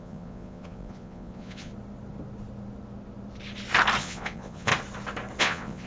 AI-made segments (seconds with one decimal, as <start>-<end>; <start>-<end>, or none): 0.0-1.7; 4.0-4.7; 5.4-5.9